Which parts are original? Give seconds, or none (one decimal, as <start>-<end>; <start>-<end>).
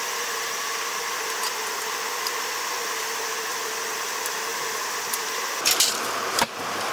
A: 0.0-5.9; 6.5-6.9